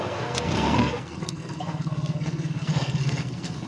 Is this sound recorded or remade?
remade